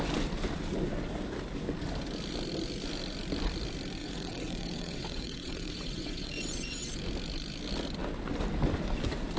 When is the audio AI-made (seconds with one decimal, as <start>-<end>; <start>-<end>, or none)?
4.0-7.0